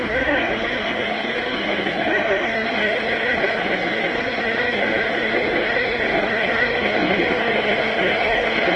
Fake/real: fake